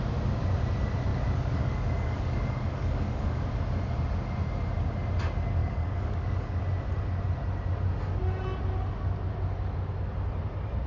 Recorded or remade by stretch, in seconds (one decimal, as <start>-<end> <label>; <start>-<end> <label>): 0.0-1.1 recorded; 1.1-3.5 remade; 3.5-5.6 recorded; 5.6-6.6 remade; 6.6-10.9 recorded